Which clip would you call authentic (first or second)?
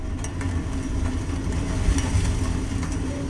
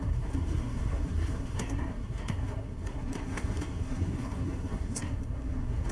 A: first